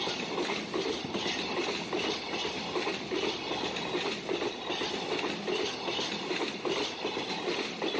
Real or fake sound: real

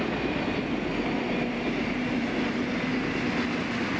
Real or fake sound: real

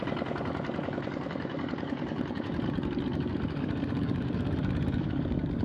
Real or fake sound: fake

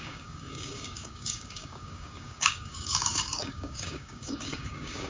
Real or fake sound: fake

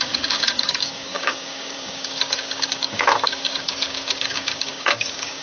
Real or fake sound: fake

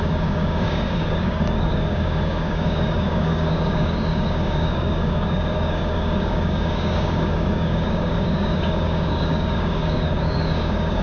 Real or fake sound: fake